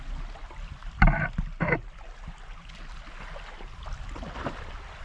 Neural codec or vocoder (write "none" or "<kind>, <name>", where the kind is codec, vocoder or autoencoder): none